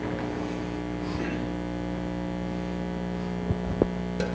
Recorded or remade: recorded